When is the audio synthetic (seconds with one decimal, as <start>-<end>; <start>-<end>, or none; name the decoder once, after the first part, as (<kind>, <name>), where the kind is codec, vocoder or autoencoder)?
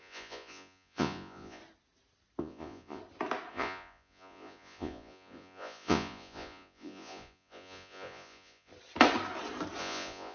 0.0-1.6 (vocoder, Vocos); 2.4-3.0; 3.5-8.7; 9.8-10.3